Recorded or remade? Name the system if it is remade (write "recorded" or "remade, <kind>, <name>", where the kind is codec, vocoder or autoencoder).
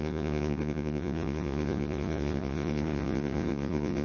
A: remade, vocoder, Vocos